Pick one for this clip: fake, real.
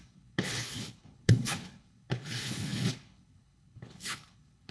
fake